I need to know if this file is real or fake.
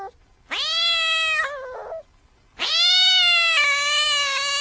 real